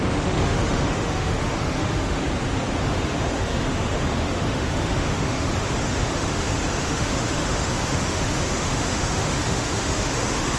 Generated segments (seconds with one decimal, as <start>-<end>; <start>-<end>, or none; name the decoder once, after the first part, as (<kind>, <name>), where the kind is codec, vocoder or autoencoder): 0.0-2.2 (autoencoder, DAC-VAE); 2.8-10.6